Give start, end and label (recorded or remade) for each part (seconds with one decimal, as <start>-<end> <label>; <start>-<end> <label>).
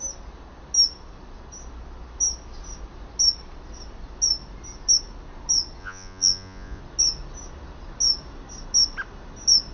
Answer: 0.0-5.8 recorded; 5.8-6.8 remade; 6.8-9.7 recorded